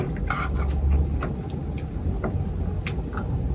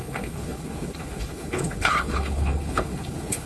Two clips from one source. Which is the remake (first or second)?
second